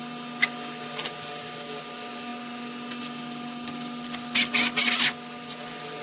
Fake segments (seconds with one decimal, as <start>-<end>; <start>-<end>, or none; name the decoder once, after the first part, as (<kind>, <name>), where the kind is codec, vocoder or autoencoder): none